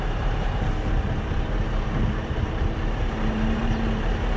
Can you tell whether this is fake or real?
fake